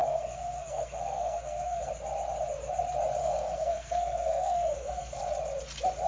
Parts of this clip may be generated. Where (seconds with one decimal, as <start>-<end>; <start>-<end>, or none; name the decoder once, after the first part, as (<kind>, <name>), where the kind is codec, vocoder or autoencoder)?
0.0-1.9 (codec, SNAC); 3.2-5.2